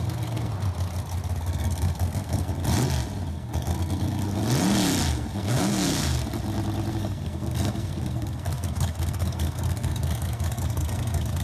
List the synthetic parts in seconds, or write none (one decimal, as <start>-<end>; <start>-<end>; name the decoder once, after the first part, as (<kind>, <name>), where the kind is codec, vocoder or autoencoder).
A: 0.0-0.5 (codec, SNAC); 1.4-2.6; 3.3-4.4; 5.1-6.2; 6.9-11.4